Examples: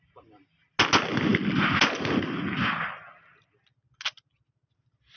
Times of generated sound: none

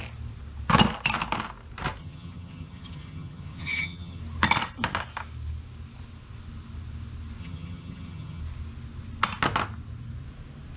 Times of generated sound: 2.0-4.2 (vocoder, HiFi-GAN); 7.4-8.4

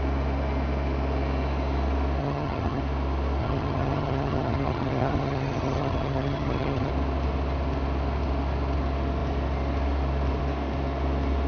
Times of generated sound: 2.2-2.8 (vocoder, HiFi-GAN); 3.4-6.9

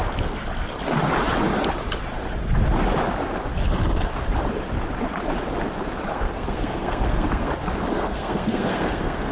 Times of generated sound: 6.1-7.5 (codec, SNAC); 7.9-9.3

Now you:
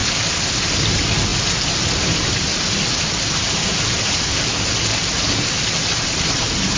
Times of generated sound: 0.9-1.3 (vocoder, BigVGAN v2); 2.1-2.5; 6.2-6.8

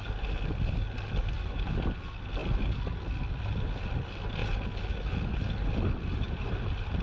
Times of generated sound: 6.1-6.6 (vocoder, BigVGAN v2)

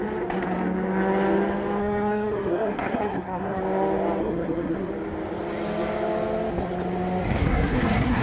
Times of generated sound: 1.8-3.6 (codec, SNAC); 4.2-4.9; 7.4-8.2